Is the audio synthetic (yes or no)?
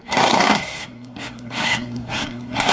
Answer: yes